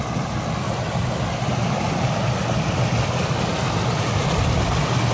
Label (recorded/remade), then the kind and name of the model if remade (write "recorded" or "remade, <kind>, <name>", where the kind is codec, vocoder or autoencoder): recorded